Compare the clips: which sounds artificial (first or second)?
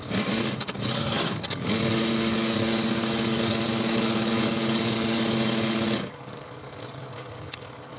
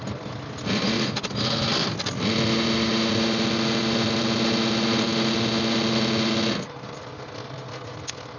first